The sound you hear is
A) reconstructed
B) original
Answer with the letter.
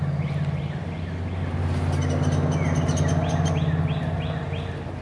B